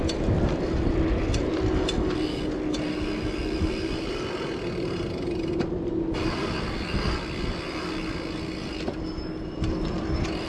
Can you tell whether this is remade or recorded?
recorded